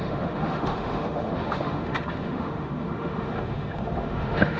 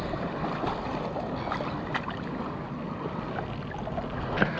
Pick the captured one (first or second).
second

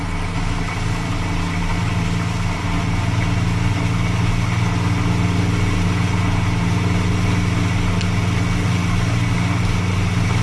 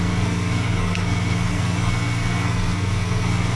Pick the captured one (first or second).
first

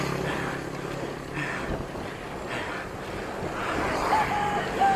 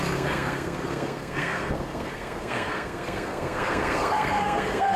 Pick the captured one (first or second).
first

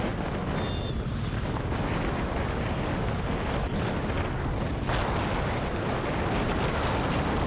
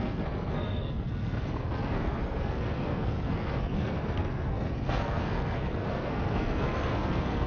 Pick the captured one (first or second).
first